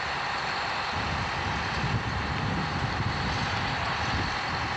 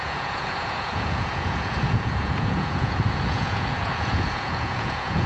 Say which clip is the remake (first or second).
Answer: second